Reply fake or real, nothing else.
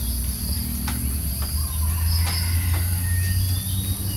real